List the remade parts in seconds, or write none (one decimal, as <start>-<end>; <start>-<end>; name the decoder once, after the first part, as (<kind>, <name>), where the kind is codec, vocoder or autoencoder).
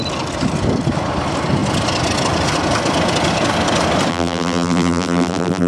4.1-5.7 (vocoder, BigVGAN v2)